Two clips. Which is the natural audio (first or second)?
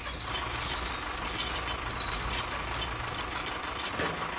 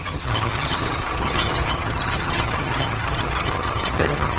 first